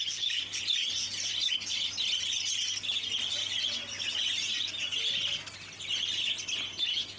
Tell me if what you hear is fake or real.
real